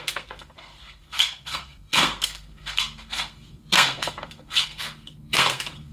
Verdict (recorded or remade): remade